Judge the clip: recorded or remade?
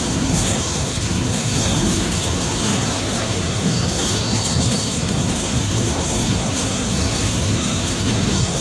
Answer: remade